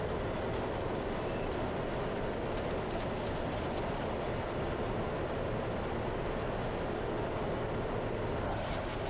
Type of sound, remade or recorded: recorded